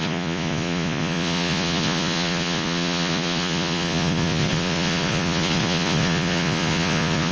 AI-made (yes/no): yes